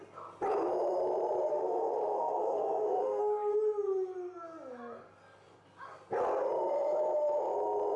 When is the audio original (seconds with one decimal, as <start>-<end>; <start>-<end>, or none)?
0.0-1.5; 3.2-8.0